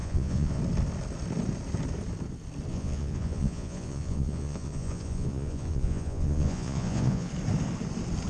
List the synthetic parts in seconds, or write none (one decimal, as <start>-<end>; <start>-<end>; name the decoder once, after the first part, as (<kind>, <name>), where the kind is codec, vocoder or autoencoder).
0.0-0.6 (vocoder, Vocos); 2.7-7.3